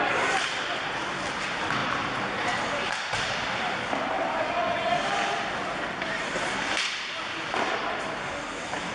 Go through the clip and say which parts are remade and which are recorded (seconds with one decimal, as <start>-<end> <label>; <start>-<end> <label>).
0.0-1.8 recorded; 1.8-3.9 remade; 3.9-8.9 recorded